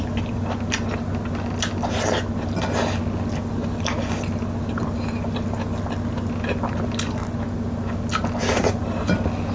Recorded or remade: recorded